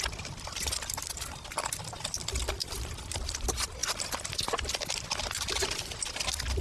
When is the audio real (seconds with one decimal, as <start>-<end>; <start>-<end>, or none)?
0.0-6.6

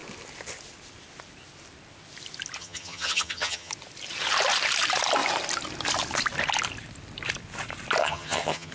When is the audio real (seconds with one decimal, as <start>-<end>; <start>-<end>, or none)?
0.0-2.6; 3.7-8.0